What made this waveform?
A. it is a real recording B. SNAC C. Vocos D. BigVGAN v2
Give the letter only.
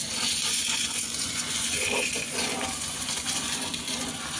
C